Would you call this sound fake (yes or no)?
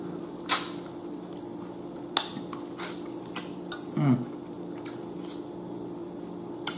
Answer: no